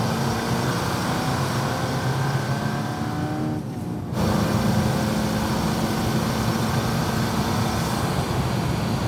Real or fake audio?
real